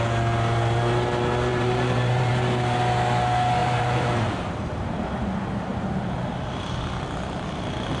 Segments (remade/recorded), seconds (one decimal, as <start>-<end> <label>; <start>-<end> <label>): 0.0-1.5 recorded; 1.5-2.3 remade; 2.3-3.6 recorded; 3.6-5.0 remade; 5.0-8.0 recorded